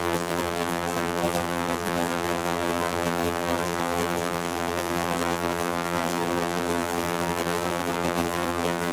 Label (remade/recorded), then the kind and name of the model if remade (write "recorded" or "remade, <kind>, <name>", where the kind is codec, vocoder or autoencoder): remade, vocoder, BigVGAN v2